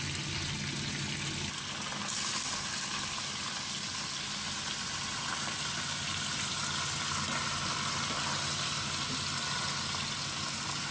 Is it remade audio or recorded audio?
recorded